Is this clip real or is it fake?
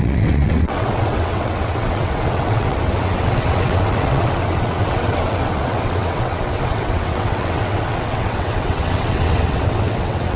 fake